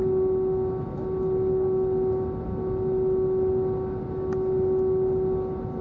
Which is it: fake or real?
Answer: real